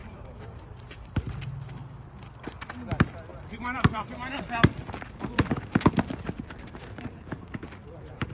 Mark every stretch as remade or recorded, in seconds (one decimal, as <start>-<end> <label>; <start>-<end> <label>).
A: 0.0-1.3 remade; 1.3-3.3 recorded; 3.3-8.3 remade